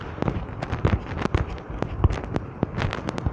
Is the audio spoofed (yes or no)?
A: yes